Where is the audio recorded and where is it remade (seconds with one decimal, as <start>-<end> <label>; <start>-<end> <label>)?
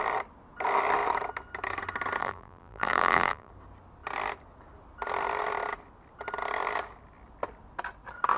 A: 0.0-2.2 recorded; 2.2-3.5 remade; 3.5-8.4 recorded